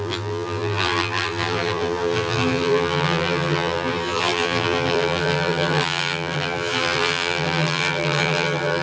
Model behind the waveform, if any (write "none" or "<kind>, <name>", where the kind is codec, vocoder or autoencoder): vocoder, BigVGAN v2